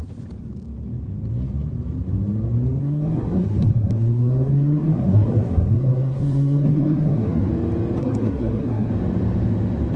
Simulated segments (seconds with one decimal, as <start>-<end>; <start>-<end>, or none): 2.8-7.5; 8.0-8.9